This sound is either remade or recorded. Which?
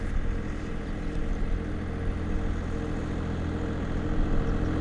recorded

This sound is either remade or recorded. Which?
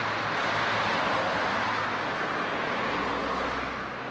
recorded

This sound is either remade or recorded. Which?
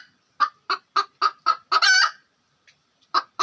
recorded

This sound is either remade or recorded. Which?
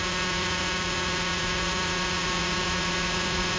remade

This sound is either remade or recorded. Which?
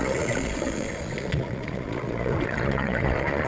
remade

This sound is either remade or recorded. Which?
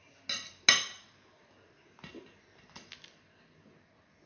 recorded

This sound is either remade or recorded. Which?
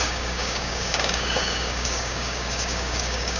remade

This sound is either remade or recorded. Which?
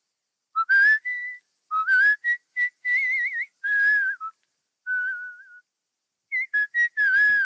recorded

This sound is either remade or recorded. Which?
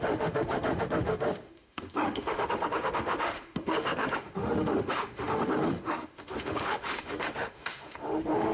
remade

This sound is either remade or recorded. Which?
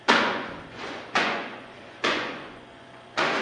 remade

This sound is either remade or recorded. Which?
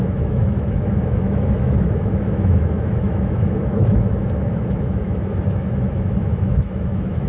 remade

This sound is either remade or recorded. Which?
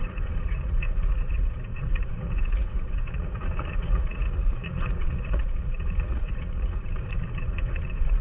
remade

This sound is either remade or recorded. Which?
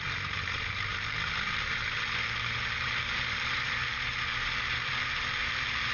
remade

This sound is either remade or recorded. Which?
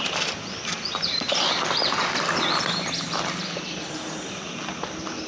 recorded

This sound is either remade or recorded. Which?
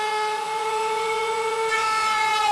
remade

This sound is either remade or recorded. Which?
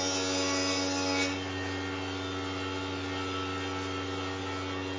recorded